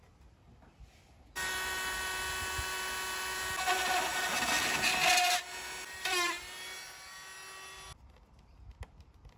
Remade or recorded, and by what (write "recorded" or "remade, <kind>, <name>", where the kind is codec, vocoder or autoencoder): recorded